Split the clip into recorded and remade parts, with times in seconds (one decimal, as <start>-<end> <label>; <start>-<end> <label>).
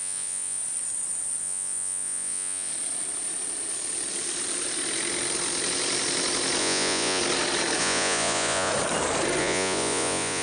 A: 0.0-0.6 remade; 0.6-1.4 recorded; 1.4-2.7 remade; 2.7-6.6 recorded; 6.6-7.2 remade; 7.2-7.8 recorded; 7.8-8.7 remade; 8.7-9.4 recorded; 9.4-10.4 remade